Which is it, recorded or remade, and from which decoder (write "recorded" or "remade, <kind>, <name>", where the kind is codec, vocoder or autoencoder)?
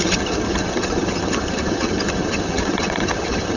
remade, vocoder, HiFi-GAN